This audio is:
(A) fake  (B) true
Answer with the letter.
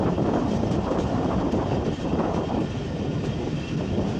B